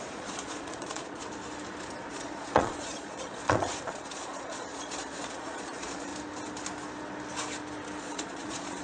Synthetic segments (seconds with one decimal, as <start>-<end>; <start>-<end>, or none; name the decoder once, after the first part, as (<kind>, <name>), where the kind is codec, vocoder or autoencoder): 0.0-1.2 (vocoder, Vocos); 2.1-6.1; 8.0-8.8